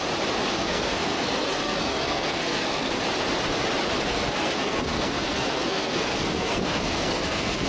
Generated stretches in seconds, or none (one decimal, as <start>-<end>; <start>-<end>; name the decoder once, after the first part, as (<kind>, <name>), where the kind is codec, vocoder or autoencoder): 0.5-3.0 (codec, SNAC); 4.1-7.7